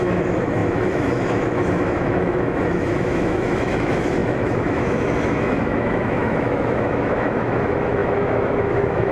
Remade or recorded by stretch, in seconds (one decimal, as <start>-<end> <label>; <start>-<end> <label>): 0.0-9.1 remade